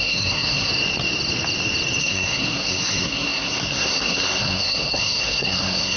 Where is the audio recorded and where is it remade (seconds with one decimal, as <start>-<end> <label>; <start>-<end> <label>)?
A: 0.0-0.7 remade; 0.7-2.0 recorded; 2.0-6.0 remade